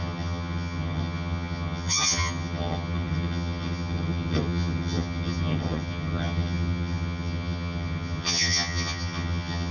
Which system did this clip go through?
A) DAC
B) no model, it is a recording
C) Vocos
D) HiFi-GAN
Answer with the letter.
D